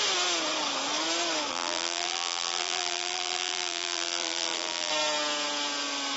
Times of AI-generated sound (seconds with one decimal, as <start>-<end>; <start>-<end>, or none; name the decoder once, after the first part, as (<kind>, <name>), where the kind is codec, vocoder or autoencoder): 1.5-4.9 (vocoder, BigVGAN v2)